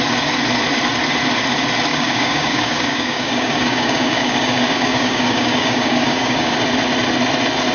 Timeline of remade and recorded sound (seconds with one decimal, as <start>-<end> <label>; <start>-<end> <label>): 0.0-1.9 recorded; 1.9-6.5 remade; 6.5-7.7 recorded